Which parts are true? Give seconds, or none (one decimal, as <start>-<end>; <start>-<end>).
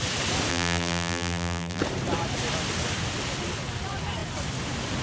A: 0.0-0.5; 1.8-5.0